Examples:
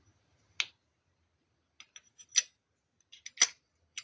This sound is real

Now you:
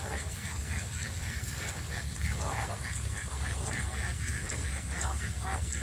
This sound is fake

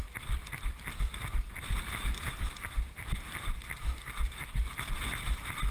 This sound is real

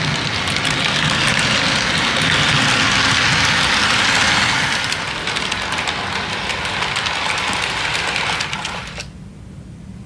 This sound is real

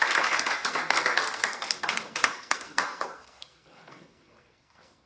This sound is fake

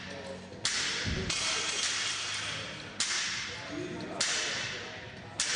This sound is real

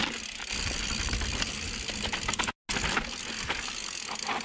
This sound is real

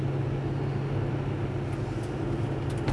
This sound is real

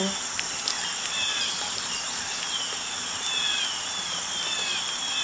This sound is real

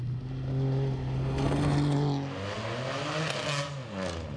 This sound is real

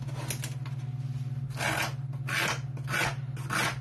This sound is real